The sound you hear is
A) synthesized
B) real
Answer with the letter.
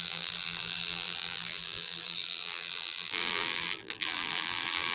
A